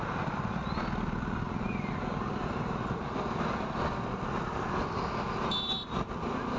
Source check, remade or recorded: recorded